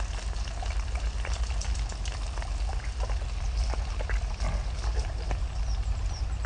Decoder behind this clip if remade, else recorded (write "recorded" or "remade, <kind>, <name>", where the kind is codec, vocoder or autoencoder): recorded